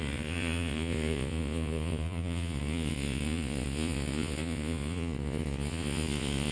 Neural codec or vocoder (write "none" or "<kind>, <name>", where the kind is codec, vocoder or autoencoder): vocoder, Vocos